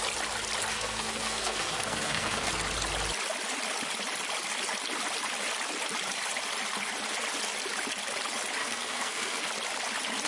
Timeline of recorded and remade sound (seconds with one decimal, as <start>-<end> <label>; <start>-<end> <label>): 0.0-0.7 recorded; 0.7-2.5 remade; 2.5-8.6 recorded; 8.6-9.5 remade; 9.5-10.3 recorded